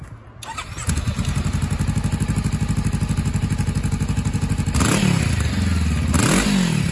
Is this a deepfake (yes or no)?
no